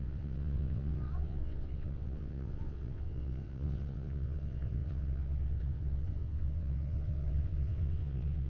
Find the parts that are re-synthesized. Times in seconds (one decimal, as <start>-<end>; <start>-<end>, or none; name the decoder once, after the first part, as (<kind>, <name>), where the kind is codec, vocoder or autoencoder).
0.0-8.5 (vocoder, WaveNeXt)